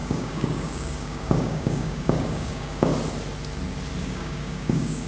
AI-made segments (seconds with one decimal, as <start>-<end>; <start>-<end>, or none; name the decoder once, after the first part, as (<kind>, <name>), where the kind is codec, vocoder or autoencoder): 0.0-2.9 (codec, DAC); 4.0-5.1